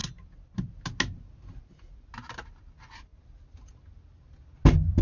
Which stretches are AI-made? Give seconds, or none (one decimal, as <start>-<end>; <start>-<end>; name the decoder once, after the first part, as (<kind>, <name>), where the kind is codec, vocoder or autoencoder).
none

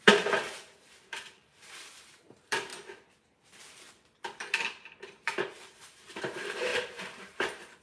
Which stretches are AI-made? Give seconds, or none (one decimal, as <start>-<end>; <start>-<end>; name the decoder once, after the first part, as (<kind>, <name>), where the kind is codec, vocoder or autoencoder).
0.0-2.7 (vocoder, BigVGAN v2); 5.4-7.8